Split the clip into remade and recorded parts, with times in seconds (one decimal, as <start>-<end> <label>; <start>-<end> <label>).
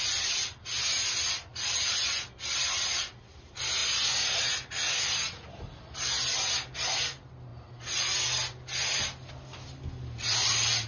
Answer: 0.0-10.9 recorded